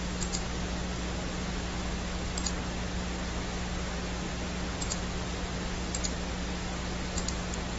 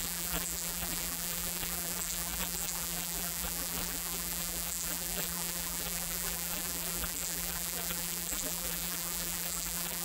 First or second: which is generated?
second